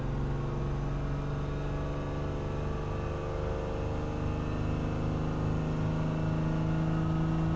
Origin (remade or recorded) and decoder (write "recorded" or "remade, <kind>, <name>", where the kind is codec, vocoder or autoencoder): recorded